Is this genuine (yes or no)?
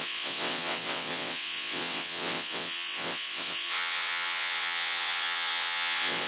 no